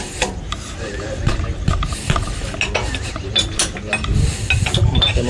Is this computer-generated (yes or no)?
no